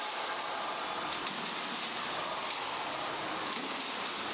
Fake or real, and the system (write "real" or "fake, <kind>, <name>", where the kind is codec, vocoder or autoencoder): real